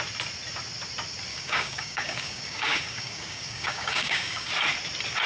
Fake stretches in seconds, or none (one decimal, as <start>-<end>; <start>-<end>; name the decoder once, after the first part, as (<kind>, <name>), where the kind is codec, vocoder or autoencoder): 1.3-4.5 (codec, DAC)